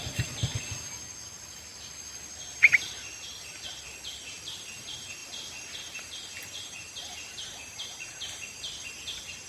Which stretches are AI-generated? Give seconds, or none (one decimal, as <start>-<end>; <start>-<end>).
none